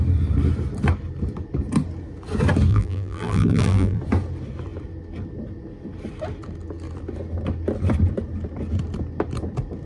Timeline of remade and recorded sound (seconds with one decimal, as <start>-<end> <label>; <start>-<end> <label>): 0.0-2.7 recorded; 2.7-4.0 remade; 4.0-9.9 recorded